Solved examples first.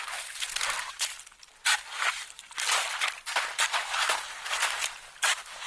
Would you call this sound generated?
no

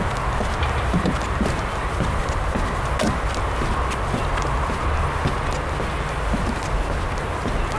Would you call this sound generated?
no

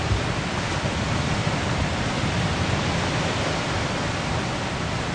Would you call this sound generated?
no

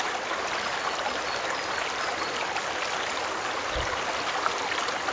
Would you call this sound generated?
no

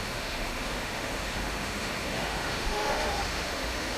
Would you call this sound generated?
yes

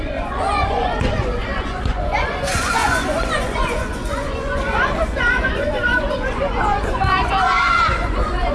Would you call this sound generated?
yes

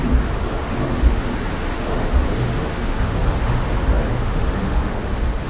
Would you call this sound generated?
yes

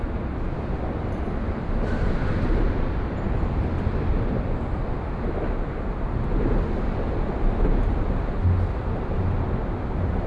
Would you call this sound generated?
no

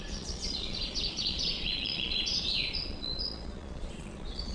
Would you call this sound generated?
yes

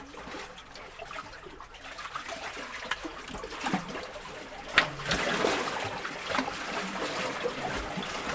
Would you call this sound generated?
no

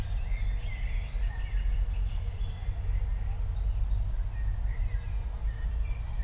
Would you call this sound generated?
no